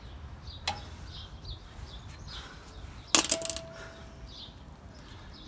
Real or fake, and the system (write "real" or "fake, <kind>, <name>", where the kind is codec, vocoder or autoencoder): real